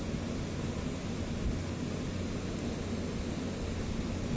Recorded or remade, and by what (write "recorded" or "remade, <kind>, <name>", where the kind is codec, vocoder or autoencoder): recorded